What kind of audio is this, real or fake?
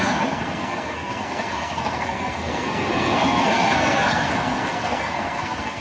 fake